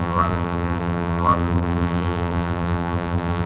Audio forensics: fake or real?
fake